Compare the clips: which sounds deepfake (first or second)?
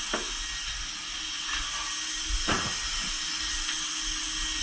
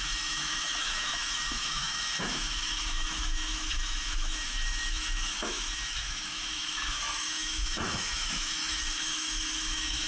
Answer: second